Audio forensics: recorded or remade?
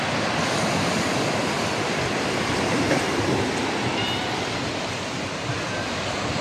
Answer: recorded